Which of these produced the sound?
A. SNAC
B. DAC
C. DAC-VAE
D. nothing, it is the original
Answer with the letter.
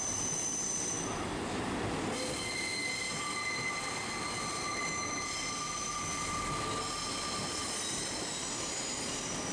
D